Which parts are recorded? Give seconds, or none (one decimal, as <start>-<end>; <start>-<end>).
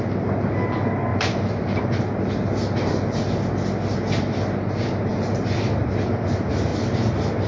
0.0-1.1; 1.8-5.1; 5.8-7.5